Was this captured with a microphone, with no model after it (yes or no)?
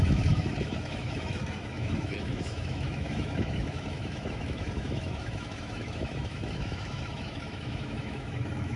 no